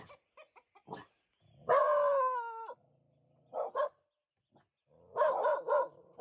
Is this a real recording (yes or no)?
yes